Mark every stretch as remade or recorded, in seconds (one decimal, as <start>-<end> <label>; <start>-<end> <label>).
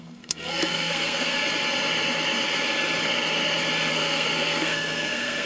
0.0-1.4 remade; 1.4-3.9 recorded; 3.9-5.5 remade